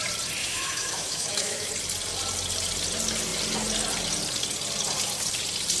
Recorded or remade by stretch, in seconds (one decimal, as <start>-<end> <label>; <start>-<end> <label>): 0.0-0.4 recorded; 0.4-1.7 remade; 1.7-5.8 recorded